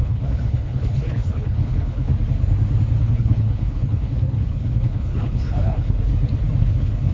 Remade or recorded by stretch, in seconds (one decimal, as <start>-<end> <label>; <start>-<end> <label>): 0.0-2.1 remade; 2.1-3.0 recorded; 3.0-6.1 remade; 6.1-6.6 recorded; 6.6-7.1 remade